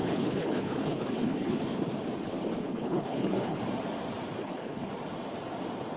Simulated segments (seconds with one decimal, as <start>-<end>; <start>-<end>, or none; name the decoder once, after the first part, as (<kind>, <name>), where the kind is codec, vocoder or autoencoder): 0.0-1.6 (codec, HILCodec); 2.6-3.6; 4.4-4.9